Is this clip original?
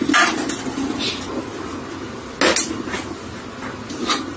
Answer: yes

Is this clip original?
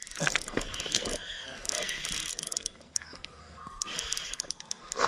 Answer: no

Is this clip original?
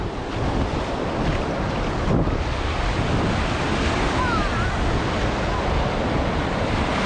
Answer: yes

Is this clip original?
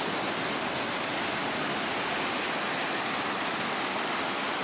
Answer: yes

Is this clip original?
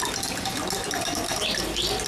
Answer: yes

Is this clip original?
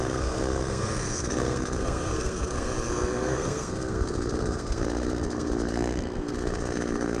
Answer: no